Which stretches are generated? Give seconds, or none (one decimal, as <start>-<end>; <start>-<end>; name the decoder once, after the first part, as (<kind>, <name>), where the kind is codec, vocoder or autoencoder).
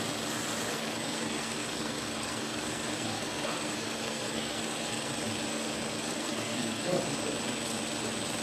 0.7-5.1 (codec, SNAC); 5.5-7.0